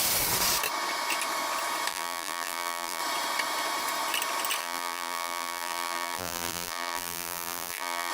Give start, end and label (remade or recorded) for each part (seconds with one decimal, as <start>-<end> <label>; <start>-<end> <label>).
0.0-1.9 recorded; 1.9-3.0 remade; 3.0-4.6 recorded; 4.6-8.1 remade